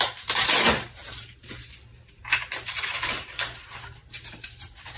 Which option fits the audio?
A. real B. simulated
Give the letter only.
B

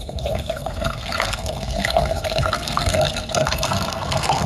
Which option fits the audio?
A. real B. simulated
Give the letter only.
B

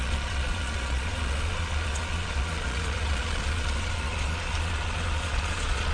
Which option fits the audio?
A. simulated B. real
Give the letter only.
A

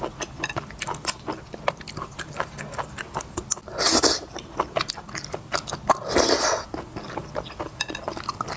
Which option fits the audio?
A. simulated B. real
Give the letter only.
B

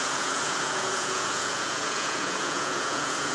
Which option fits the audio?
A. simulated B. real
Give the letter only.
A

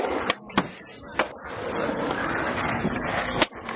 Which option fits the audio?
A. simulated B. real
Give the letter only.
B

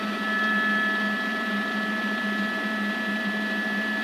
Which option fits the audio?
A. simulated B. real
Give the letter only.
B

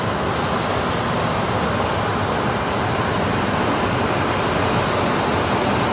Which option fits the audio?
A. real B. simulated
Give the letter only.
A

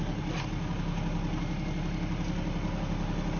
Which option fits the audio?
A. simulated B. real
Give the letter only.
B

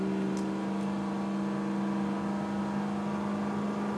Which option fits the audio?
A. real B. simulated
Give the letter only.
A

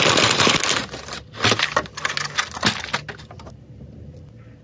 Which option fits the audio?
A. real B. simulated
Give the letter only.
A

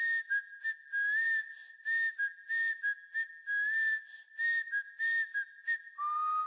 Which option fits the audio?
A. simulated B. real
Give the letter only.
B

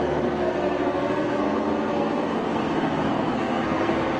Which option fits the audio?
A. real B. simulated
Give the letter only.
B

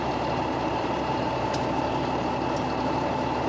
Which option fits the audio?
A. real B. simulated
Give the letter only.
B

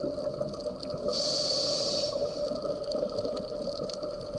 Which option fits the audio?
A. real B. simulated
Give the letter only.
A